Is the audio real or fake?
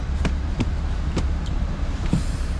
fake